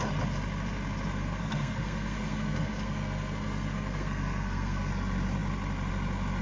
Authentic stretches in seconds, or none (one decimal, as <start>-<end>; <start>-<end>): 0.0-1.1; 4.9-6.4